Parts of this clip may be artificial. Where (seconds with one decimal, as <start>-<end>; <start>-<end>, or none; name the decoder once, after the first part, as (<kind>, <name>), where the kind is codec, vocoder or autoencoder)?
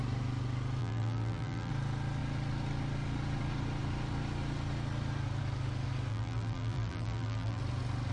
0.8-1.7 (vocoder, BigVGAN v2); 6.1-7.6